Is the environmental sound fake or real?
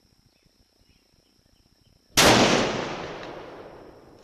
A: real